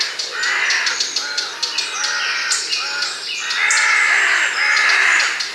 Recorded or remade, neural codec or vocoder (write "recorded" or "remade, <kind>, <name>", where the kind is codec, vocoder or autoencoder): recorded